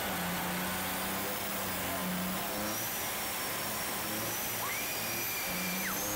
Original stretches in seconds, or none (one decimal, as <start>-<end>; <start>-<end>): 0.0-6.2